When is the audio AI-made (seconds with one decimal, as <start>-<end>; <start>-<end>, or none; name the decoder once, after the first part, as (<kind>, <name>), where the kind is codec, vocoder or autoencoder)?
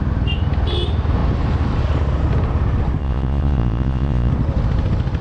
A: 3.0-4.3 (vocoder, Vocos)